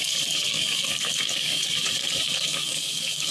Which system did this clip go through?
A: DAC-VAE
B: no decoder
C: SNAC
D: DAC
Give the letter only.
D